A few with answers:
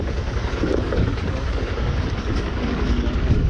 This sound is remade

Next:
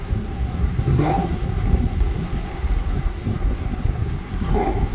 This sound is remade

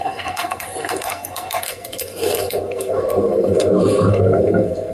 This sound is remade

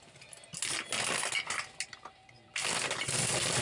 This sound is recorded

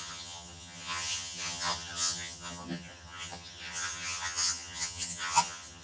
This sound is remade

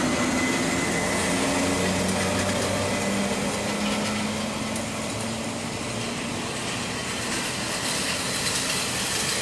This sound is recorded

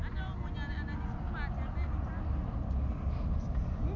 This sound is recorded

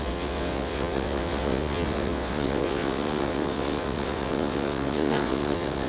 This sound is remade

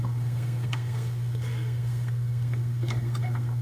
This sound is remade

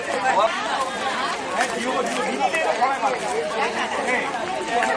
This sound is recorded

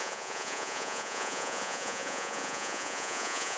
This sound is remade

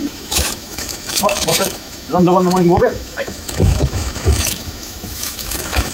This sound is remade